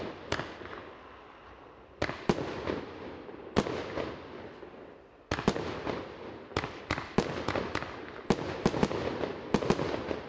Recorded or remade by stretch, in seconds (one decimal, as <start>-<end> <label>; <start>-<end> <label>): 0.0-10.3 recorded